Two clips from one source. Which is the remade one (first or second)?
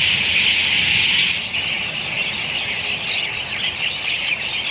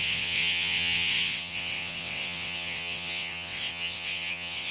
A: second